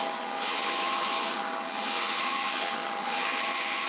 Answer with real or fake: fake